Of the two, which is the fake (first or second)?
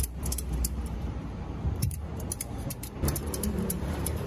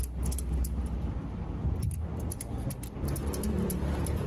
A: first